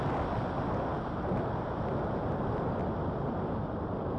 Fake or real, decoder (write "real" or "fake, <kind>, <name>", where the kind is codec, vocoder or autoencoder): real